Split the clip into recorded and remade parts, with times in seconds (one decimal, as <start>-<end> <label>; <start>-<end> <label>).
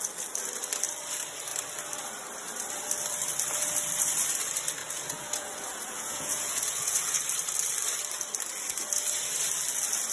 0.0-4.8 recorded; 4.8-7.2 remade; 7.2-10.1 recorded